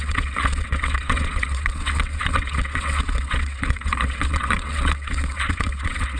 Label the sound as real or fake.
fake